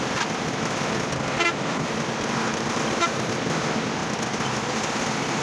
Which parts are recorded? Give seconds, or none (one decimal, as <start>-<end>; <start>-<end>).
0.0-5.4